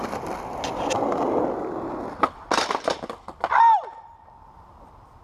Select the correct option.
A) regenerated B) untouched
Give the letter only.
B